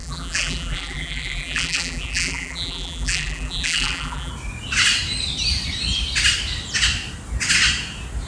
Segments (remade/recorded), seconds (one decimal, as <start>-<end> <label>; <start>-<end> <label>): 0.0-4.3 remade; 4.3-8.3 recorded